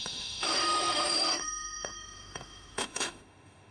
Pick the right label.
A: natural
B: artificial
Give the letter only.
B